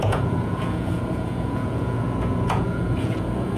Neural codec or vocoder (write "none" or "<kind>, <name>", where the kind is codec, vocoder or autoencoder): vocoder, Vocos